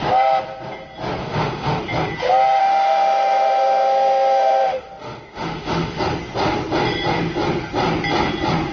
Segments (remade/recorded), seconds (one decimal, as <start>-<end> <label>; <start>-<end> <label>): 0.0-1.2 recorded; 1.2-1.8 remade; 1.8-2.6 recorded; 2.6-6.0 remade; 6.0-8.7 recorded